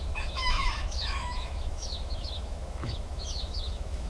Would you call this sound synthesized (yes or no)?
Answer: yes